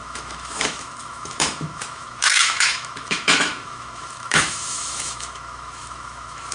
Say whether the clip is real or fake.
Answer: fake